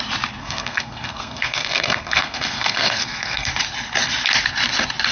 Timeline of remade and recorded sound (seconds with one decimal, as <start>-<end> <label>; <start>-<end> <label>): 0.0-0.4 recorded; 0.4-3.5 remade; 3.5-5.1 recorded